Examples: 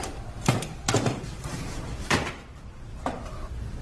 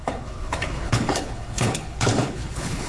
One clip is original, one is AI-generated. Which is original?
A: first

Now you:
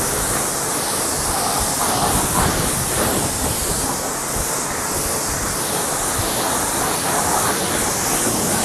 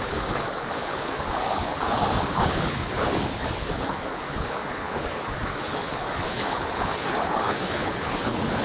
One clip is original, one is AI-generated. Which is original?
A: first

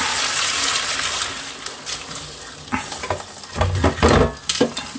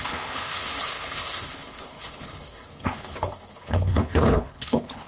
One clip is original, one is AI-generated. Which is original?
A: first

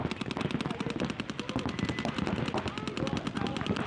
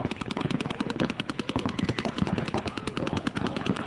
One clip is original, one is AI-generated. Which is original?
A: first